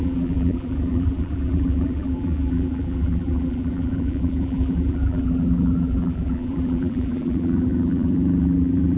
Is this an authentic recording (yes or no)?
no